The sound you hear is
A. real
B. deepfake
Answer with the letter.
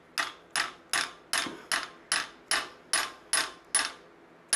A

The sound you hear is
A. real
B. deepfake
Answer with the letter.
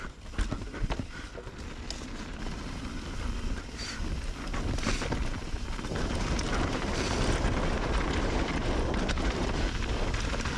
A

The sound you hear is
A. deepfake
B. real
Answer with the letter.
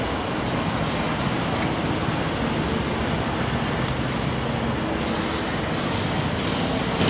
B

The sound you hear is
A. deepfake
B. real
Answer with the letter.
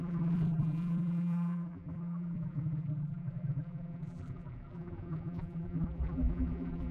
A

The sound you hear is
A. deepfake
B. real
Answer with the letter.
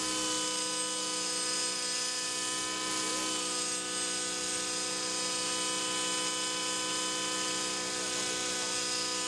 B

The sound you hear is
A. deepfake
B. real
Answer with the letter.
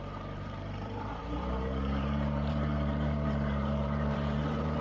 A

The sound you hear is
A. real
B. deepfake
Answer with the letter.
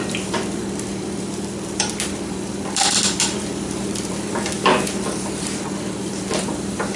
B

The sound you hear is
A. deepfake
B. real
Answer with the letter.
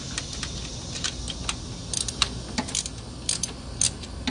B